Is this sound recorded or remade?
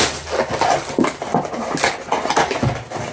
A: recorded